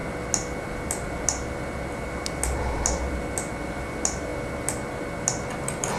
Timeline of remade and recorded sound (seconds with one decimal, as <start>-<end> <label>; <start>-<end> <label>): 0.0-6.0 recorded